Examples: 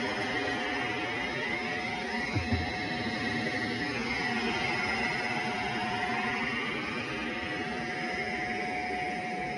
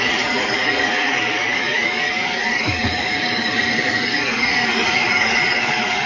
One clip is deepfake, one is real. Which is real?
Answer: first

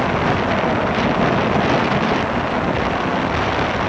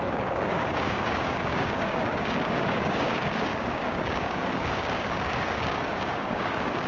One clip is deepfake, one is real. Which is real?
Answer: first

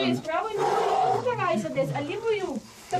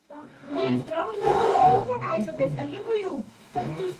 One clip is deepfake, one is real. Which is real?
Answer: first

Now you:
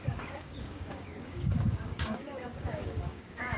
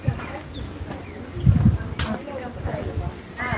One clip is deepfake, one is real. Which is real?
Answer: second